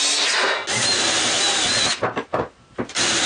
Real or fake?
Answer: real